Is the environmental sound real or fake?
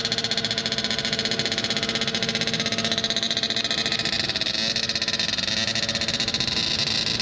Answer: real